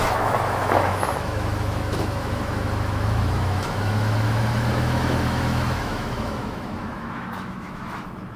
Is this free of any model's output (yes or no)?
no